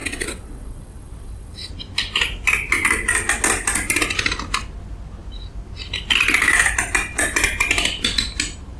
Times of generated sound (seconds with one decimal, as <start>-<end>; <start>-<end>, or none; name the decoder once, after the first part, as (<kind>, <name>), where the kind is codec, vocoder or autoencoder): 0.0-1.7 (vocoder, WaveNeXt)